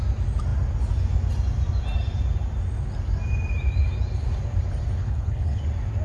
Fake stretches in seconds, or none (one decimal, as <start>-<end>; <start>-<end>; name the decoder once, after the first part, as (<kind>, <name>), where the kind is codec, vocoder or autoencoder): 5.0-5.6 (codec, HILCodec)